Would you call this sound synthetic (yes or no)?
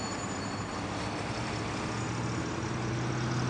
no